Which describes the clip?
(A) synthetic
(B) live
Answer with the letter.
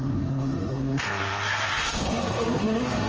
A